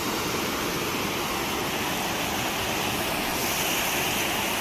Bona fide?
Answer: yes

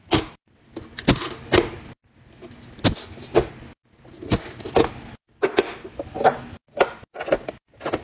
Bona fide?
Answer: yes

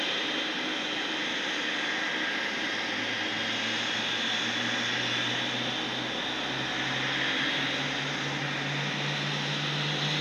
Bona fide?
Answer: yes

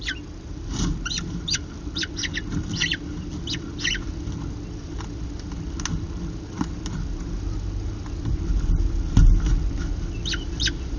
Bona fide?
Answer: yes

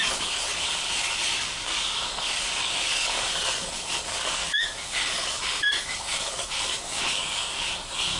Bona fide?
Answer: no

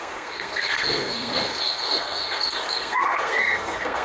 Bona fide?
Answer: no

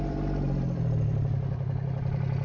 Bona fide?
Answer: no